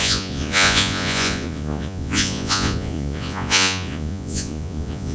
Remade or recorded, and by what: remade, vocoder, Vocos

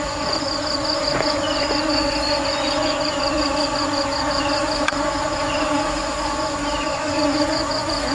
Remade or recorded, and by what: remade, vocoder, Vocos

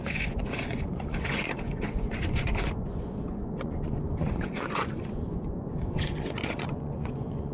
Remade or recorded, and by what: remade, vocoder, Vocos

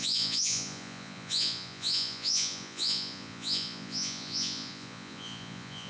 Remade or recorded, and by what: remade, vocoder, Vocos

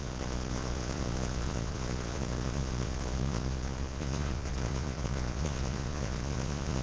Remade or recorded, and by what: remade, vocoder, Vocos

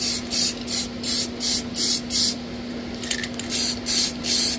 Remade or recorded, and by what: recorded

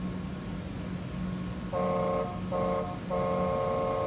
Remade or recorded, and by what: recorded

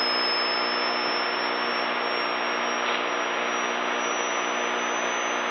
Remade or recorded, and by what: recorded